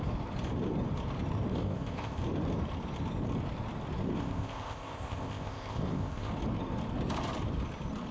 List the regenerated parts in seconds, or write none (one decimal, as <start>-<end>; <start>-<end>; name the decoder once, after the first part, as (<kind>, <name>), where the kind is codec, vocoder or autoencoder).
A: 1.6-2.2 (codec, ZipCodec); 4.2-6.3